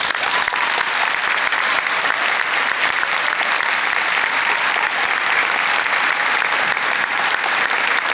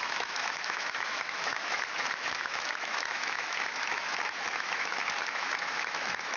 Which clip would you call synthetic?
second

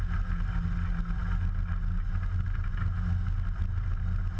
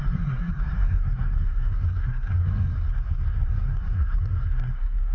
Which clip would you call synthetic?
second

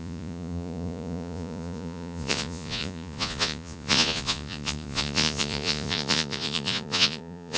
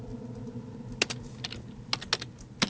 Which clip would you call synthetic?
first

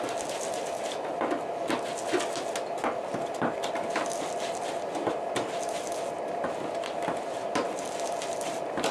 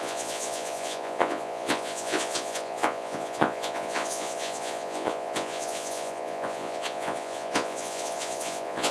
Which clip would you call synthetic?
second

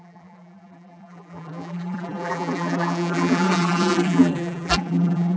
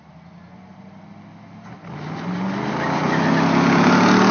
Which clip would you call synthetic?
first